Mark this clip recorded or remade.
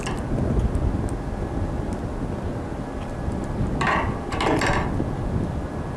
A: recorded